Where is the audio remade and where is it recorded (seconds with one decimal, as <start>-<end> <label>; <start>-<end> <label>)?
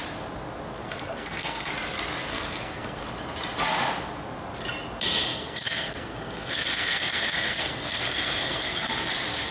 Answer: 0.0-0.8 recorded; 0.8-1.7 remade; 1.7-2.3 recorded; 2.3-3.0 remade; 3.0-5.3 recorded; 5.3-8.9 remade; 8.9-9.5 recorded